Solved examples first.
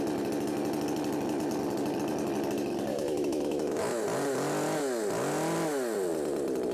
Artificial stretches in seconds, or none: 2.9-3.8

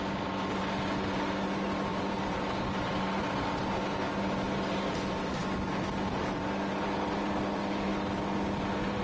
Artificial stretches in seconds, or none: none

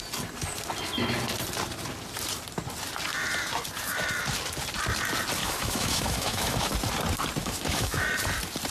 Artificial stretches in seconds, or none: 5.4-6.7; 7.4-8.0

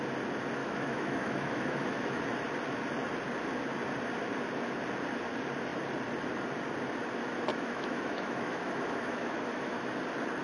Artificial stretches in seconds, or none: 0.6-2.2; 7.5-9.9

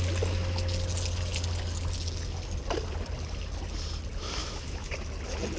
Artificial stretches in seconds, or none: 4.4-4.9

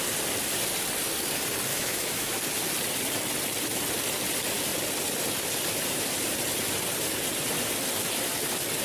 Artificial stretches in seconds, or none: 1.7-2.4

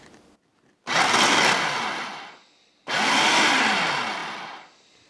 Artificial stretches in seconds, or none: none